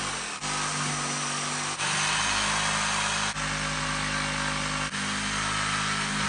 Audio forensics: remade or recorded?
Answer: recorded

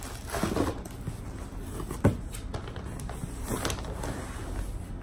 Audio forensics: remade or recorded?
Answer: recorded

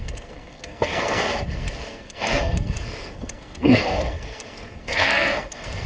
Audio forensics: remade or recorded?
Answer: remade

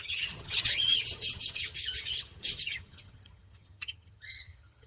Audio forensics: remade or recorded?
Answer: remade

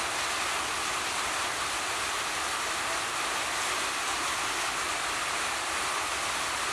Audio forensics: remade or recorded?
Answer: recorded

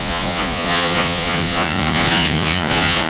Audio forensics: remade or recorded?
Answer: remade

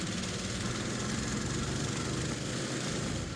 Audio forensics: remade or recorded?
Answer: recorded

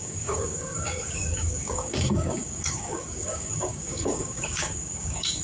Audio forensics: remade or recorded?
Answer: remade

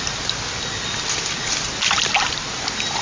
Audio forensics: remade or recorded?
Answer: recorded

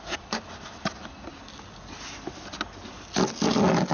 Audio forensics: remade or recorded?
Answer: recorded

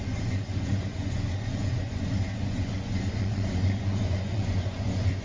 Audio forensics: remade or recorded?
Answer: remade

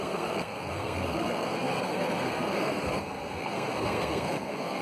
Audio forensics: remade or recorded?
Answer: remade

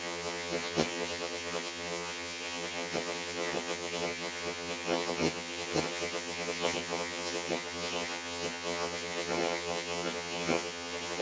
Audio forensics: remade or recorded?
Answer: remade